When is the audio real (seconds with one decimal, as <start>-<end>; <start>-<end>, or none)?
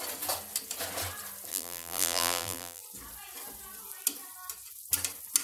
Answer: 0.0-1.5; 2.8-5.4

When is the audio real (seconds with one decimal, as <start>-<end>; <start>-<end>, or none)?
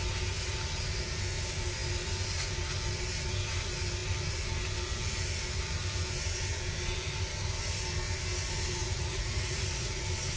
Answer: 0.0-8.8; 10.0-10.4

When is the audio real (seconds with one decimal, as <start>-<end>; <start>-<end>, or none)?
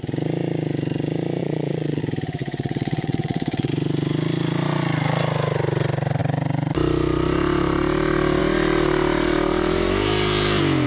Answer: 0.0-1.4; 2.0-2.4; 3.7-10.9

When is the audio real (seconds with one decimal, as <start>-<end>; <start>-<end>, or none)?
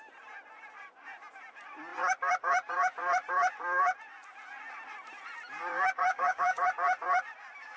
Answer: 0.0-6.1; 6.6-7.8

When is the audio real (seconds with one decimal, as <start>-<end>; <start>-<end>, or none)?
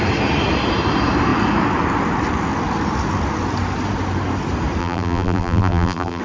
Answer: 0.0-4.8